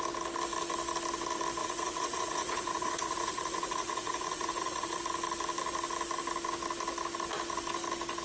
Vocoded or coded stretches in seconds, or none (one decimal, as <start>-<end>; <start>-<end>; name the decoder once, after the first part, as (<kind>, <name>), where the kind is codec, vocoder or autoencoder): 1.6-5.0 (vocoder, Vocos)